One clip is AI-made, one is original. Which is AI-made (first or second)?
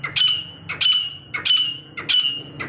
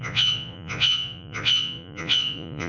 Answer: second